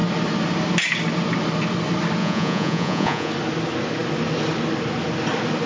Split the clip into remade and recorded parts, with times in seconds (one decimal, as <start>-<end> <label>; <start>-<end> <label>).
0.0-2.2 recorded; 2.2-3.3 remade; 3.3-5.7 recorded